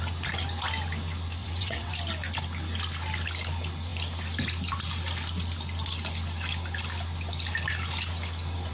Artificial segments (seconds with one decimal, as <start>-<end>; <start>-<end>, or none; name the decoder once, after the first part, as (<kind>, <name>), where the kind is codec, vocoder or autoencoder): 1.4-1.9 (vocoder, WaveNeXt)